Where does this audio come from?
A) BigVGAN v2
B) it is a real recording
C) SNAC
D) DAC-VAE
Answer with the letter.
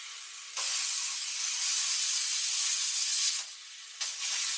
B